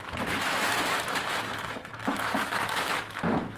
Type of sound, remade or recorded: remade